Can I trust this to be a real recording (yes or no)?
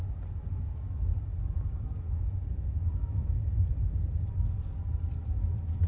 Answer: yes